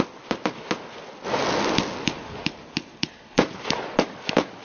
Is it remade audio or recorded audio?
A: recorded